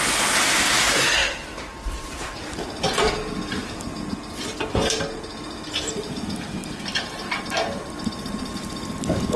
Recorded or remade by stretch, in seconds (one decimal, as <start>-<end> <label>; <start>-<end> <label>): 0.0-1.2 recorded; 1.2-3.0 remade; 3.0-6.6 recorded; 6.6-8.5 remade; 8.5-9.4 recorded